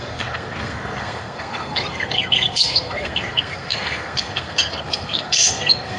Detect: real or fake fake